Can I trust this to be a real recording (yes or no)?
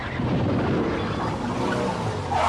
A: yes